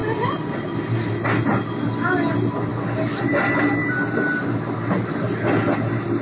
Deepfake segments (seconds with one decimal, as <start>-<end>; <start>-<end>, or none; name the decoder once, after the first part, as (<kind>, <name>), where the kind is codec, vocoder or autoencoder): none